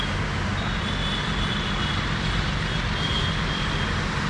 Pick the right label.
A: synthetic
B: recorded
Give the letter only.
B